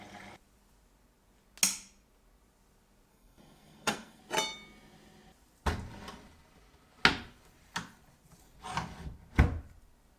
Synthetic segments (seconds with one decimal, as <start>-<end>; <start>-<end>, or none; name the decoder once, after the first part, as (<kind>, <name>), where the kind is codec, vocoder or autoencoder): 3.1-4.2 (codec, SNAC)